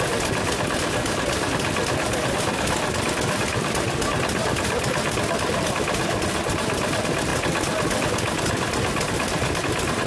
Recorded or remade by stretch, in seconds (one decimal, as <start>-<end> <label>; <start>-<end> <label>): 0.0-10.1 recorded